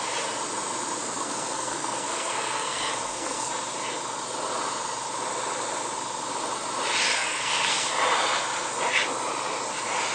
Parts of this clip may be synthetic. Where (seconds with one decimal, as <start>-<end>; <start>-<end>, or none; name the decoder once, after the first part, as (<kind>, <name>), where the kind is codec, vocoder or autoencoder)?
1.0-3.5 (codec, SNAC); 7.1-7.9